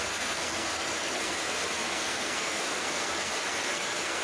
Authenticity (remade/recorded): remade